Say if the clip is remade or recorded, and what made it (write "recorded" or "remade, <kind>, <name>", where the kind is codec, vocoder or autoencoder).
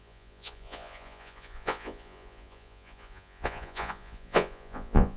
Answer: remade, vocoder, Vocos